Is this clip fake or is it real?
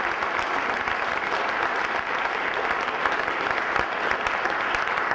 real